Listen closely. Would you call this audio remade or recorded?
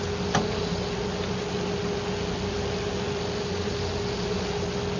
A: recorded